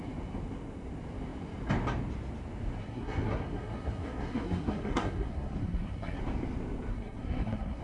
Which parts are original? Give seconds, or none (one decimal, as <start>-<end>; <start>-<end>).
0.0-2.8; 6.2-6.9